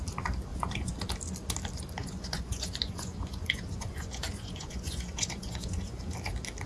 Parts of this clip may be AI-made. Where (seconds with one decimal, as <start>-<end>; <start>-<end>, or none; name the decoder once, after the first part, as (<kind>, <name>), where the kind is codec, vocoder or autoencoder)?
0.5-1.0 (vocoder, Vocos); 2.0-6.0